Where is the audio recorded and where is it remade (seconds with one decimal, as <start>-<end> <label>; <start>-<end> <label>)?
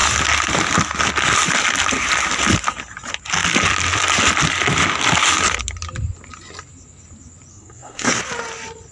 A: 0.0-7.5 recorded; 7.5-8.2 remade; 8.2-8.9 recorded